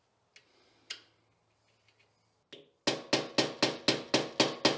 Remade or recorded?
recorded